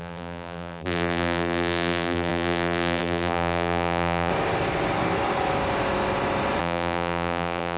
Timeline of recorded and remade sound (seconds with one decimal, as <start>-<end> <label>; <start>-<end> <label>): 0.0-4.3 remade; 4.3-6.6 recorded; 6.6-7.8 remade